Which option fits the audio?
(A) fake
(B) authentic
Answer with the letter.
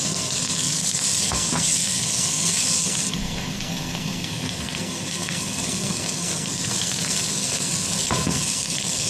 A